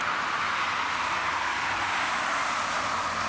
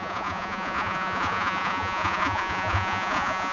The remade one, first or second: second